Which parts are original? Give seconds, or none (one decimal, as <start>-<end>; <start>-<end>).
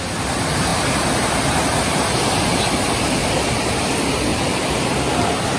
0.0-3.2; 3.9-4.3; 5.1-5.6